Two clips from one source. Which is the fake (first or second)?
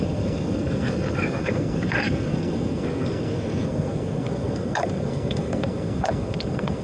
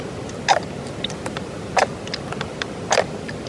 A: first